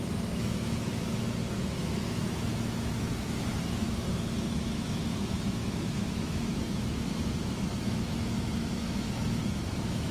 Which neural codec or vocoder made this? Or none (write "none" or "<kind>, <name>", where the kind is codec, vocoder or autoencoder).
autoencoder, DAC-VAE